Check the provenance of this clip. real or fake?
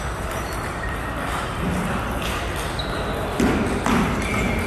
real